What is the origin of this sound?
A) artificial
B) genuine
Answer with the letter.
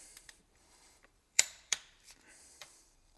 A